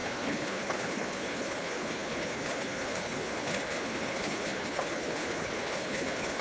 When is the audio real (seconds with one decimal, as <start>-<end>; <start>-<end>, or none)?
none